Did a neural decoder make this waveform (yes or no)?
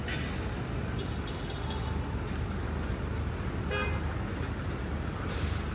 no